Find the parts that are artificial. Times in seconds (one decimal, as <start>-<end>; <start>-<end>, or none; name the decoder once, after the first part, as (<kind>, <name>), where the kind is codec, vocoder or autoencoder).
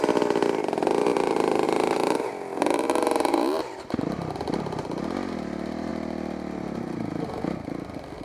1.1-2.3 (vocoder, BigVGAN v2)